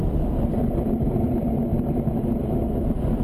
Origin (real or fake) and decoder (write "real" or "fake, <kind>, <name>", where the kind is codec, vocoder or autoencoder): real